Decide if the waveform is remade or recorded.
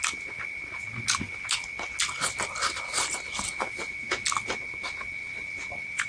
recorded